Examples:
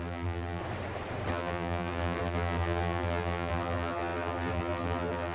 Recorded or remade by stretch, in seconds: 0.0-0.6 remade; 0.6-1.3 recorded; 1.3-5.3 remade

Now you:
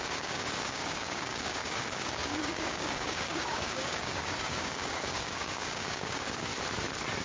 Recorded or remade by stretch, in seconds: 0.0-6.5 remade; 6.5-7.2 recorded

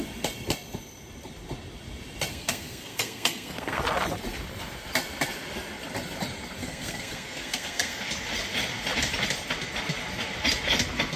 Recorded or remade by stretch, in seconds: 0.0-2.3 recorded; 2.3-3.8 remade; 3.8-6.6 recorded; 6.6-8.0 remade; 8.0-11.2 recorded

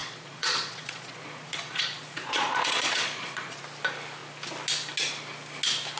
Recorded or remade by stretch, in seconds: 0.0-3.6 remade; 3.6-6.0 recorded

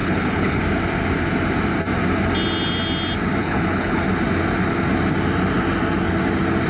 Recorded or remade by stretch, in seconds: 0.0-0.6 remade; 0.6-3.4 recorded; 3.4-4.0 remade; 4.0-6.7 recorded

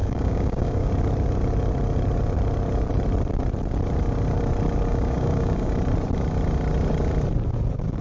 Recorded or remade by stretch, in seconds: 0.0-0.9 remade; 0.9-4.9 recorded; 4.9-5.7 remade; 5.7-8.0 recorded